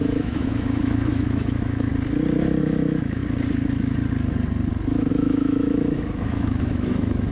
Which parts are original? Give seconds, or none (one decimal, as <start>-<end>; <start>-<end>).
1.9-2.6; 3.2-5.1

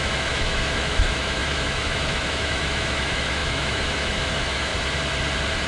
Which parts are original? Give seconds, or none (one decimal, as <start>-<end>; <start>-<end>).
4.7-5.7

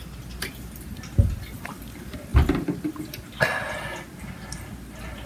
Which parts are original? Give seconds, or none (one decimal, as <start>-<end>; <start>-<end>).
0.0-5.3

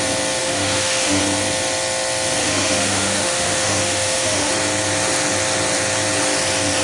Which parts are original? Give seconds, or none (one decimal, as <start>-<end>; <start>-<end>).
0.0-0.4; 1.2-2.4; 4.5-6.8

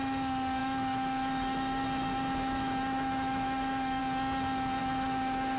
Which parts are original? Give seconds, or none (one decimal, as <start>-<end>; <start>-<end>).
0.0-0.6; 4.0-4.8

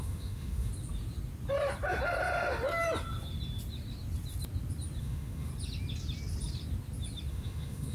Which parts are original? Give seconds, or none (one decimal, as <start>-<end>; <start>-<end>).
0.7-5.0; 5.5-7.3

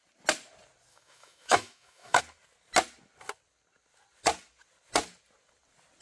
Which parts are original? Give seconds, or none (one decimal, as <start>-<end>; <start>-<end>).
0.0-0.9; 2.2-6.0